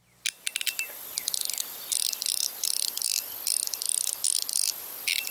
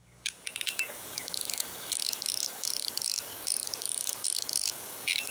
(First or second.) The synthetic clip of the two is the second